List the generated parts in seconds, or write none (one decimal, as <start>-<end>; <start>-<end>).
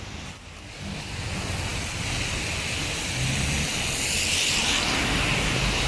none